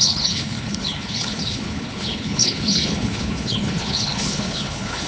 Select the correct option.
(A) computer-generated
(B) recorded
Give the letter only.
A